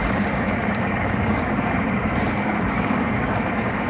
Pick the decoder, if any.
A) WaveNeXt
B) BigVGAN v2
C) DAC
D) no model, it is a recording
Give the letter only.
C